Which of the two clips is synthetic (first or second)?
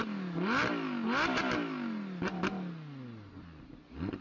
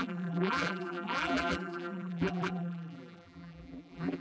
second